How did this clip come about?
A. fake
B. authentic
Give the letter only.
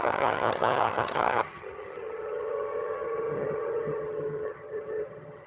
A